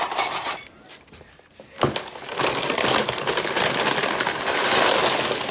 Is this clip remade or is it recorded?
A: recorded